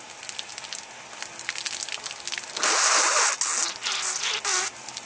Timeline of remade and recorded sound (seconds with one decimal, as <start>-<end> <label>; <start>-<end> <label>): 0.0-5.1 recorded